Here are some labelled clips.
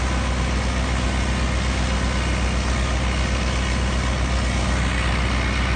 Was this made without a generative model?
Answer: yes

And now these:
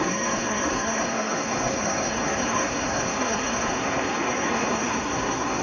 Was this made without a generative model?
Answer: no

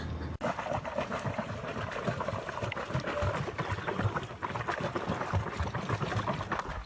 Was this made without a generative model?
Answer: yes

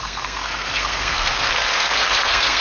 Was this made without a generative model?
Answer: no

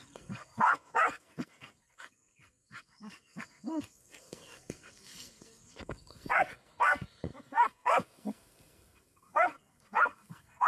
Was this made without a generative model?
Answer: no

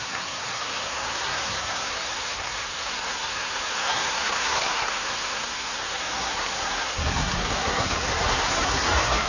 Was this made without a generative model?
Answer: no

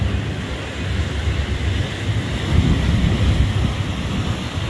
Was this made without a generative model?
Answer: yes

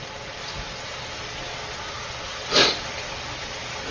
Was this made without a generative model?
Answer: yes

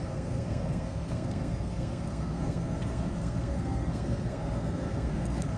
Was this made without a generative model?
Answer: no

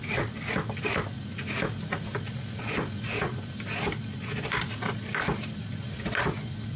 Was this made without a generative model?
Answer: yes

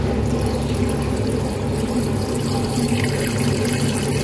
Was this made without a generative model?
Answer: yes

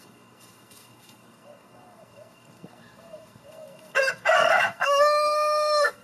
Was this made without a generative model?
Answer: no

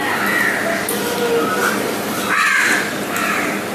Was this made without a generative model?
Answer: yes